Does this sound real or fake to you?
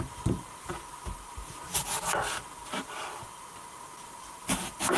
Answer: real